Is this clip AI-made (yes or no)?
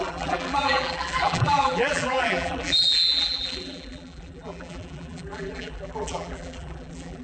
yes